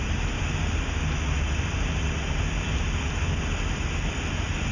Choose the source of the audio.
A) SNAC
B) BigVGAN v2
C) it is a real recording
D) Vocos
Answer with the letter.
C